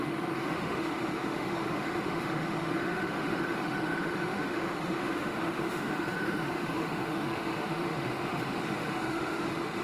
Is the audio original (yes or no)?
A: no